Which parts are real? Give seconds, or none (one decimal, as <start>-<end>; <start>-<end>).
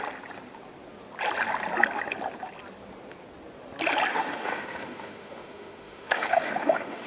0.0-4.1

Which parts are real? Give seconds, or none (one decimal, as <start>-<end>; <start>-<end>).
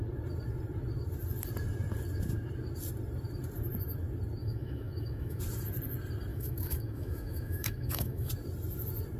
0.0-4.4; 5.4-6.3; 8.3-9.2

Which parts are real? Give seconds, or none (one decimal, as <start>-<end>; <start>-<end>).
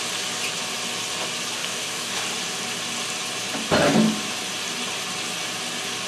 0.0-1.6; 2.2-6.1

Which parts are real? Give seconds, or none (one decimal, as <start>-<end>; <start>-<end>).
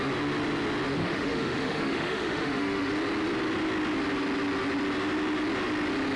0.0-1.0; 2.9-6.2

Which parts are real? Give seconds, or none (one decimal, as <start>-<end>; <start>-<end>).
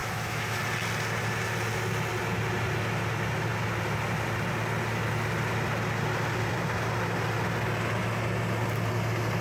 0.6-9.4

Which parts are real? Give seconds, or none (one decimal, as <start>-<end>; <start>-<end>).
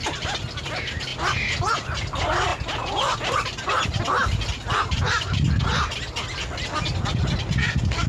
0.0-8.1